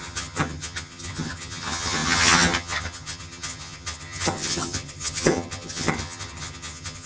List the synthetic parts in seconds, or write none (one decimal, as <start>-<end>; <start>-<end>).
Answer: 0.0-7.1